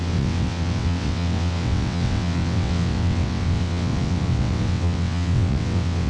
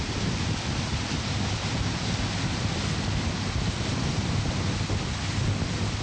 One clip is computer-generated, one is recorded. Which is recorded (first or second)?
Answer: second